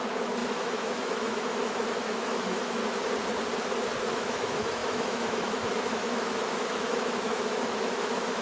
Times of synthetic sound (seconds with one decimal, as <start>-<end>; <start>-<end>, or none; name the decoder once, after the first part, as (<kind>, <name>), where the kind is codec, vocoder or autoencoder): 0.0-2.8 (autoencoder, DAC-VAE); 4.1-8.4